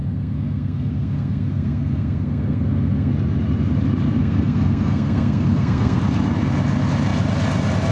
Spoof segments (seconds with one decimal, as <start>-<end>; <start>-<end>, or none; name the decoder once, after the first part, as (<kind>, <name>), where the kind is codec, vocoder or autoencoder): 0.0-3.1 (codec, SNAC); 4.2-6.0